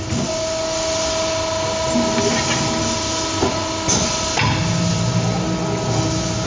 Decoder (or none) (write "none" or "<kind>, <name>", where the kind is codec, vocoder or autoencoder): none